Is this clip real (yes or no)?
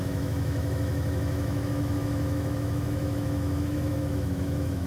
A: no